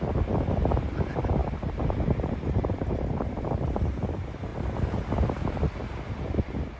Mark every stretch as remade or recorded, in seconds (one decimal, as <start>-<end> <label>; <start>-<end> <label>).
0.0-1.4 recorded; 1.4-3.9 remade; 3.9-4.5 recorded; 4.5-5.1 remade; 5.1-6.8 recorded